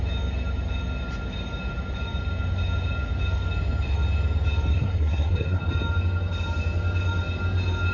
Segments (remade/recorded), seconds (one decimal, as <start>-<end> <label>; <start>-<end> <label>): 0.0-4.7 recorded; 4.7-5.6 remade; 5.6-7.9 recorded